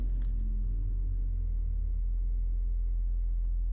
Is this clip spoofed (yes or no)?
no